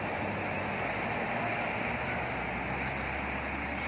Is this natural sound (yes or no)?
yes